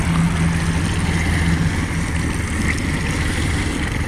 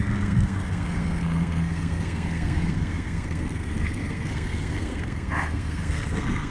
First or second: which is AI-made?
second